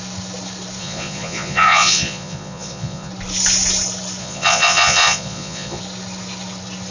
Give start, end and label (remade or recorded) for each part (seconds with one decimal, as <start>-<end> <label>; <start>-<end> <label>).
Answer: 0.0-0.8 recorded; 0.8-3.1 remade; 3.1-4.2 recorded; 4.2-5.8 remade; 5.8-6.9 recorded